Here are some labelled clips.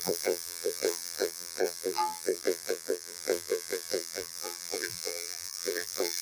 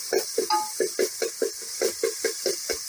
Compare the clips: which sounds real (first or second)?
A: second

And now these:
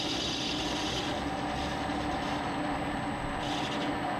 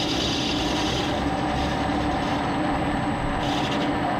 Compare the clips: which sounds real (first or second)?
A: first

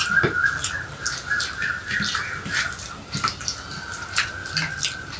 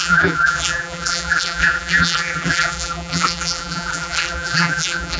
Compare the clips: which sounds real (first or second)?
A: first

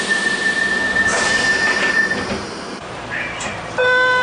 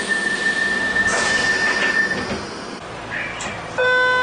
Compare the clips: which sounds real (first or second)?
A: second